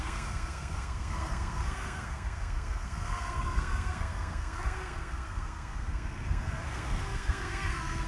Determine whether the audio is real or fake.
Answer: fake